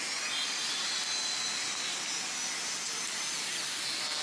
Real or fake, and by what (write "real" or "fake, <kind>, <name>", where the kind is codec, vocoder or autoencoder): real